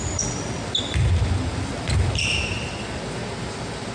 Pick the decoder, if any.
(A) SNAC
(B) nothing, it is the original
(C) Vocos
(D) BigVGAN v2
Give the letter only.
B